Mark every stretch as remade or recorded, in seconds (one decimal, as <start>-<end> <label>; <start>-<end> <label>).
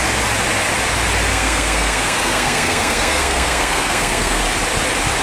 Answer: 0.0-1.3 recorded; 1.3-4.4 remade; 4.4-5.2 recorded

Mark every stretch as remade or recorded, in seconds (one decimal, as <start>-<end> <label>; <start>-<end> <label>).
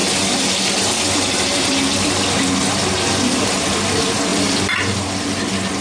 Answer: 0.0-4.3 recorded; 4.3-4.9 remade; 4.9-5.8 recorded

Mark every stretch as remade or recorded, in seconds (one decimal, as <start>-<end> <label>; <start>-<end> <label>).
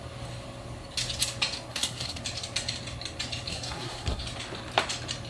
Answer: 0.0-1.7 recorded; 1.7-2.2 remade; 2.2-3.5 recorded; 3.5-4.2 remade; 4.2-5.3 recorded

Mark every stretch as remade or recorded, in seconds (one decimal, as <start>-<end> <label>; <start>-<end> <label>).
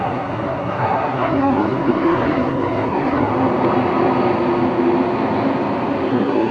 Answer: 0.0-3.3 remade; 3.3-6.1 recorded; 6.1-6.5 remade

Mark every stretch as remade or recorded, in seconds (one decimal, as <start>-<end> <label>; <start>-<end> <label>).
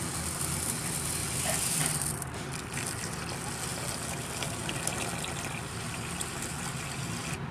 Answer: 0.0-1.2 recorded; 1.2-1.8 remade; 1.8-7.5 recorded